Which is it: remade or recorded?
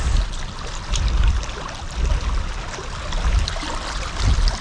recorded